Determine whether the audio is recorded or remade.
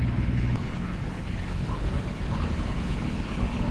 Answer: remade